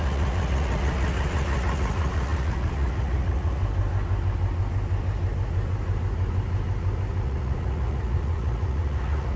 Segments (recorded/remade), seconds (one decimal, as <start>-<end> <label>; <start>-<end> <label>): 0.0-3.6 remade; 3.6-7.2 recorded; 7.2-9.4 remade